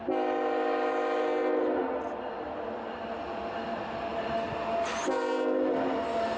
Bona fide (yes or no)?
yes